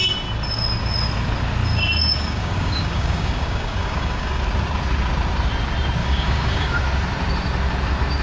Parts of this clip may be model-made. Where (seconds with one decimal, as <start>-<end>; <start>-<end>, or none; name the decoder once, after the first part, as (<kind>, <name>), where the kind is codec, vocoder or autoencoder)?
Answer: 2.0-4.4 (codec, DAC); 6.0-6.8